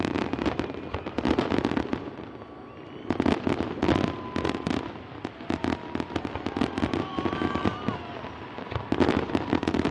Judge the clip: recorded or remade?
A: recorded